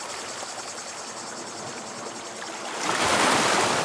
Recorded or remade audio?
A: recorded